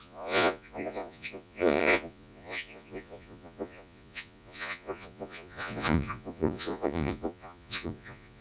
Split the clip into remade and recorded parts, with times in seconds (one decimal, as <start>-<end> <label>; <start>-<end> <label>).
0.0-8.4 remade